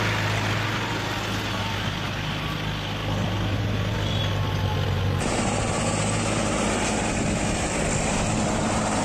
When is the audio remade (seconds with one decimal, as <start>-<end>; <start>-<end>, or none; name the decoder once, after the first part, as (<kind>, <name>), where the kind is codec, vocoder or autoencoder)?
none